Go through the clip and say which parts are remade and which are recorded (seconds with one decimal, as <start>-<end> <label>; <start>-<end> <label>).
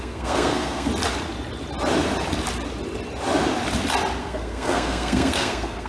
0.0-0.9 remade; 0.9-4.2 recorded; 4.2-5.9 remade